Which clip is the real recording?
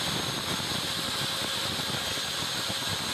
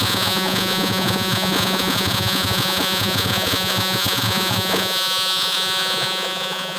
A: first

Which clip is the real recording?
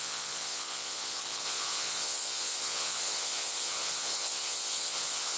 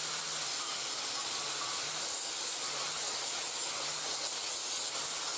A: second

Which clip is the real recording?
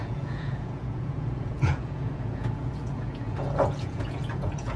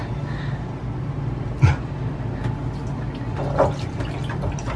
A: second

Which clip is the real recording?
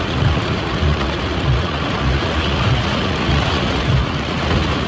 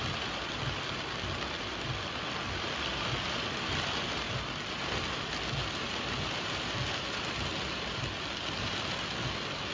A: second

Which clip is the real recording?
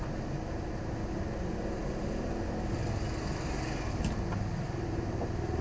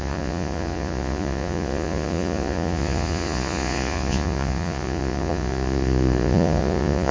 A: first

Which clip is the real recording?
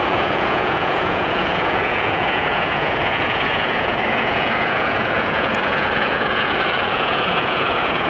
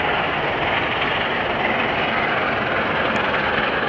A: second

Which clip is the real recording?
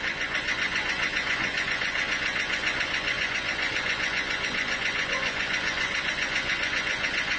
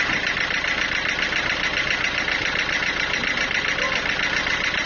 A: second